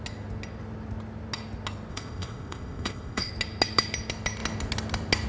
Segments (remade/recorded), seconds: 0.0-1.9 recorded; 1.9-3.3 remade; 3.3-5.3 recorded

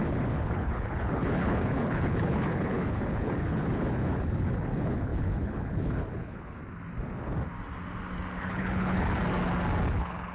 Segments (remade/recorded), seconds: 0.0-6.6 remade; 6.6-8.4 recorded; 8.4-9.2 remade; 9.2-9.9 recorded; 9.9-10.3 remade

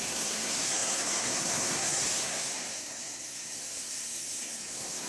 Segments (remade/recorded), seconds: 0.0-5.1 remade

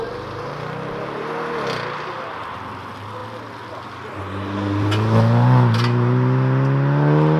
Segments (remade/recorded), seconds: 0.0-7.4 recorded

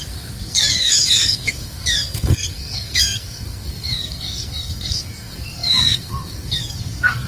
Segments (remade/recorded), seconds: 0.0-7.3 remade

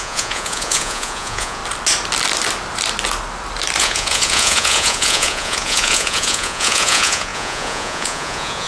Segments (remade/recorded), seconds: 0.0-1.6 remade; 1.6-3.8 recorded; 3.8-8.7 remade